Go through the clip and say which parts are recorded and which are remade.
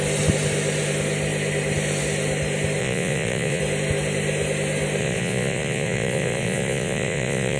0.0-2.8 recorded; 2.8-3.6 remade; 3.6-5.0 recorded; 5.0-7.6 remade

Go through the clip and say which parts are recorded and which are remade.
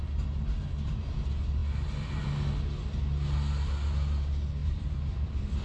0.0-4.6 recorded; 4.6-5.6 remade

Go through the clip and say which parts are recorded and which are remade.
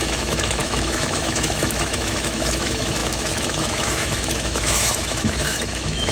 0.0-6.1 remade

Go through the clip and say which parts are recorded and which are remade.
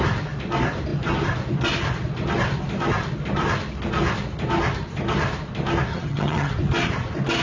0.0-5.9 recorded; 5.9-6.5 remade; 6.5-7.4 recorded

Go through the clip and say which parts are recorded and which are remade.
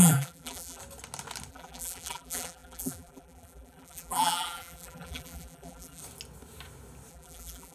0.0-0.8 remade; 0.8-1.5 recorded; 1.5-6.0 remade; 6.0-7.1 recorded; 7.1-7.7 remade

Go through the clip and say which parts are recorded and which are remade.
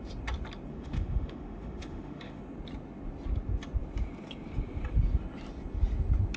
0.0-0.7 recorded; 0.7-2.4 remade; 2.4-6.4 recorded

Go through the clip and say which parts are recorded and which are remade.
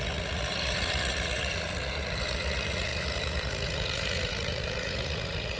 0.0-5.6 remade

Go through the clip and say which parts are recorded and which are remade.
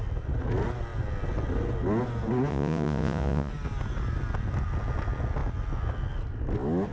0.0-2.5 recorded; 2.5-3.5 remade; 3.5-6.9 recorded